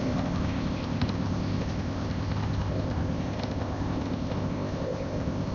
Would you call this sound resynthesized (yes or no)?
yes